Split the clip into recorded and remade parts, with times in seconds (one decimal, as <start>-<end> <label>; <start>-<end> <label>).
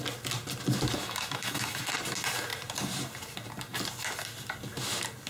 0.0-1.0 recorded; 1.0-1.8 remade; 1.8-5.3 recorded